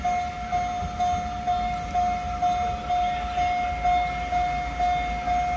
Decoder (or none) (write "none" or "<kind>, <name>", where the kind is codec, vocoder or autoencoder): none